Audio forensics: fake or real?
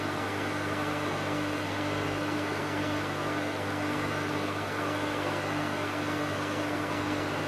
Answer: fake